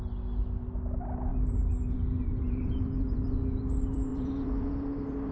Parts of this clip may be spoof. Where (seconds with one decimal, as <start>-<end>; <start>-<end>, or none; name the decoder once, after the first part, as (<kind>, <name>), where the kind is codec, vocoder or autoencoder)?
1.3-3.4 (vocoder, BigVGAN v2); 4.1-5.3